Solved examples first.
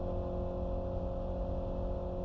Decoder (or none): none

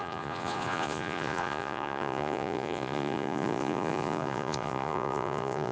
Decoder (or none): vocoder, Vocos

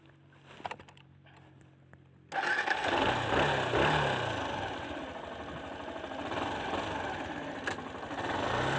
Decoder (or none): none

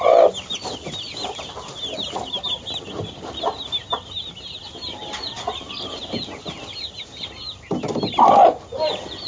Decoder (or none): none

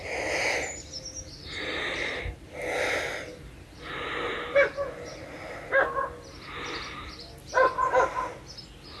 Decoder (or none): none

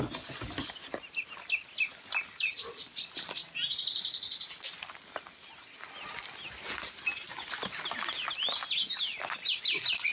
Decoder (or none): none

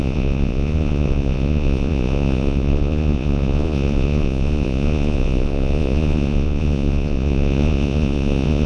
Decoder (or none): vocoder, Vocos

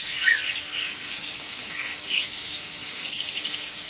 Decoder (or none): codec, SNAC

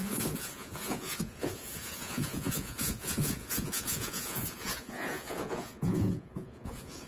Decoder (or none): vocoder, Vocos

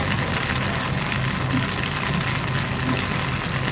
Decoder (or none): none